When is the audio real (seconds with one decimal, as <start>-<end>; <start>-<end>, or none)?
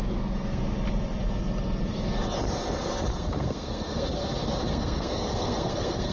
0.6-3.1; 4.2-4.7